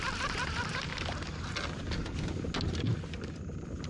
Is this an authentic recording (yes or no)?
yes